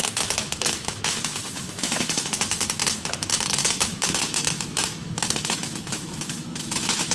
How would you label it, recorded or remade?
remade